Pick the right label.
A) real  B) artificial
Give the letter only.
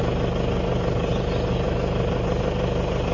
A